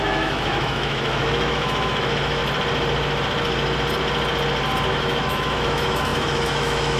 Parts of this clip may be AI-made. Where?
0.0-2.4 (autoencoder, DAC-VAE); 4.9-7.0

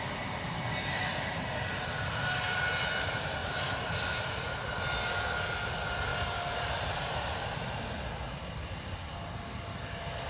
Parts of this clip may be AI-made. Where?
none

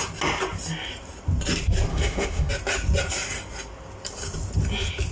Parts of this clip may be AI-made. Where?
1.9-2.5 (autoencoder, DAC-VAE)

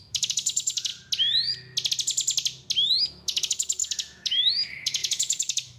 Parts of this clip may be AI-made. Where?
0.0-0.9 (autoencoder, DAC-VAE); 3.0-5.8

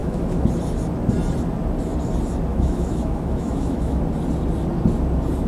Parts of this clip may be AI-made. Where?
0.0-0.5 (autoencoder, DAC-VAE); 2.5-4.0

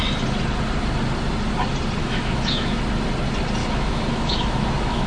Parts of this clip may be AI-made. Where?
2.0-2.8 (autoencoder, DAC-VAE); 3.6-5.1

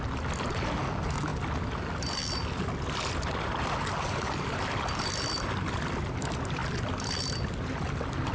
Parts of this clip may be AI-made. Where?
none

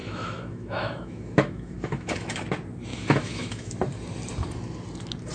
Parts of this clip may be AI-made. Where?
0.0-2.4 (autoencoder, DAC-VAE); 2.9-3.7